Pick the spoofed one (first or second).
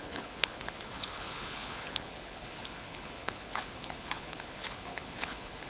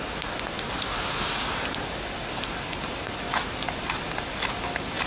first